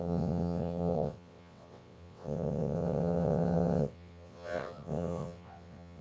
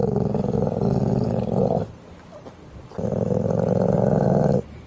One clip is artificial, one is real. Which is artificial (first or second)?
first